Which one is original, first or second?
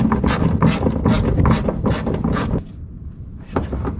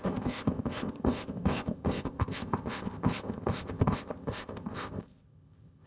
first